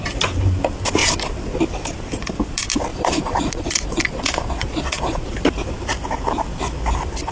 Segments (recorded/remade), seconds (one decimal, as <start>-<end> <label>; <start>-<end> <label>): 0.0-2.9 recorded; 2.9-5.3 remade; 5.3-7.3 recorded